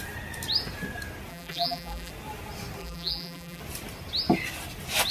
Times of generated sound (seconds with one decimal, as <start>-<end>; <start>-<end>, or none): 1.3-2.1; 2.8-3.6